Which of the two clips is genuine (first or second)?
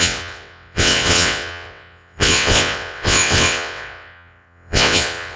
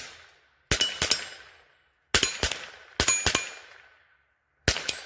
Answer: second